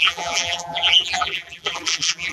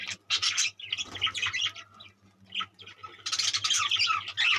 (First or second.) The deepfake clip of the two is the first